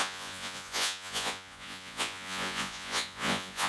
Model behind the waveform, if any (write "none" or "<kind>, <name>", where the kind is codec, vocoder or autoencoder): vocoder, Vocos